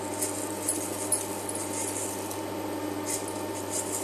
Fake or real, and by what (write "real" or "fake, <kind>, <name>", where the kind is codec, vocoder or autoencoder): fake, vocoder, BigVGAN v2